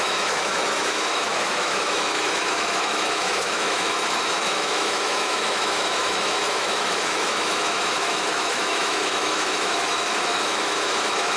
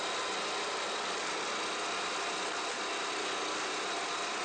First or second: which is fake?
first